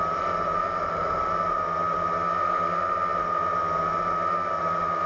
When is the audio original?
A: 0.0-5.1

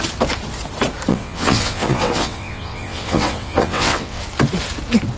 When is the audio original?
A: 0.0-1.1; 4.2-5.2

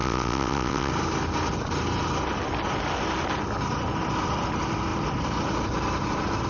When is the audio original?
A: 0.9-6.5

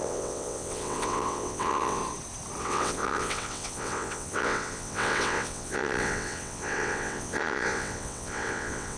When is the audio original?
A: 2.0-2.6

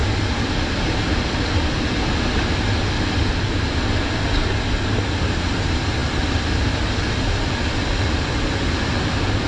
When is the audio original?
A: 0.0-9.5

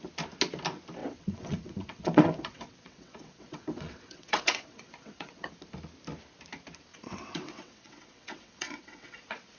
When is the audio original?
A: 0.0-1.0; 5.5-6.9